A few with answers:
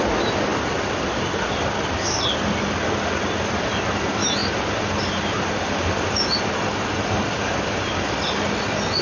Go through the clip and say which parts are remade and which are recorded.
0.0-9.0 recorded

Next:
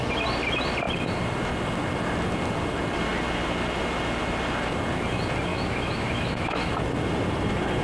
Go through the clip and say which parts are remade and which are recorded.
0.0-5.5 recorded; 5.5-6.7 remade; 6.7-7.8 recorded

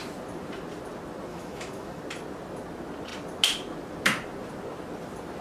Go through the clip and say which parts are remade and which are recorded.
0.0-1.3 recorded; 1.3-2.0 remade; 2.0-5.4 recorded

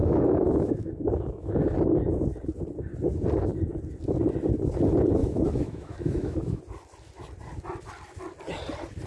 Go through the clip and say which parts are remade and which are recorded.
0.0-1.5 remade; 1.5-5.2 recorded; 5.2-6.6 remade; 6.6-9.1 recorded

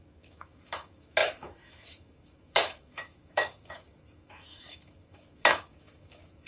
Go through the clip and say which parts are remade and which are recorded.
0.0-6.5 remade

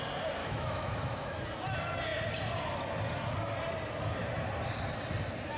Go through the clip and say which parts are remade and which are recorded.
0.0-0.4 recorded; 0.4-1.4 remade; 1.4-5.6 recorded

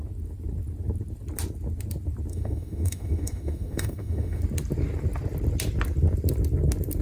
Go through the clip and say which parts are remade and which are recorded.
0.0-2.3 recorded; 2.3-4.4 remade; 4.4-7.0 recorded